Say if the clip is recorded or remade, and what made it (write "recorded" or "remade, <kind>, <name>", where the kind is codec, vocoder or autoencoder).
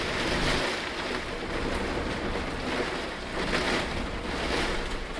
recorded